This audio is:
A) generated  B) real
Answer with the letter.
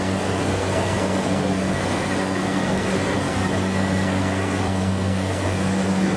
A